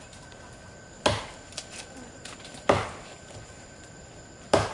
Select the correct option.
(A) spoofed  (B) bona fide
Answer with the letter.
B